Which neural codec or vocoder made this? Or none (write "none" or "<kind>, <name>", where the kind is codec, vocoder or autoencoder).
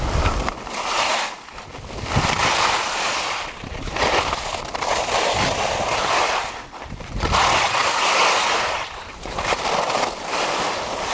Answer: none